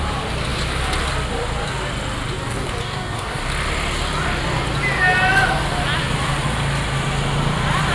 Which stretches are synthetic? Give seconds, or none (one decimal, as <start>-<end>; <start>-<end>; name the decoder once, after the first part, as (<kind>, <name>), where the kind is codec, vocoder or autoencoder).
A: 2.8-3.5 (codec, DAC)